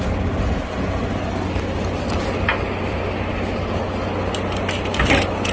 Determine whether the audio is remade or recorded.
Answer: recorded